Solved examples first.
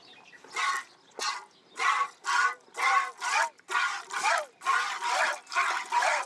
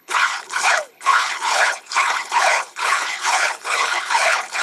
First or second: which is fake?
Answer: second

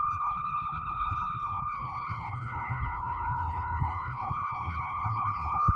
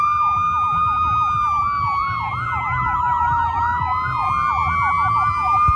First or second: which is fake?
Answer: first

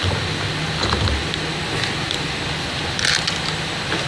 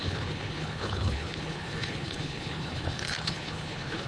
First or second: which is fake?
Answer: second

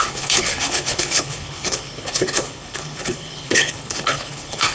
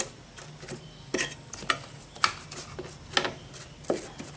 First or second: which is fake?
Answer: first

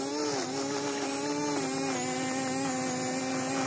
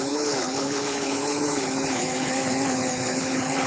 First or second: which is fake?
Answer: second